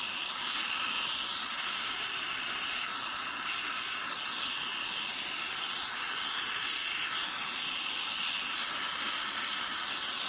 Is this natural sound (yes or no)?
yes